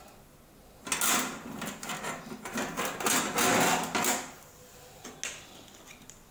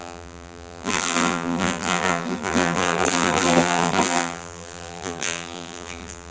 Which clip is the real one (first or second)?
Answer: first